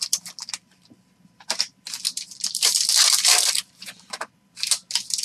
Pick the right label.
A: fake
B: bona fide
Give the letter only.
A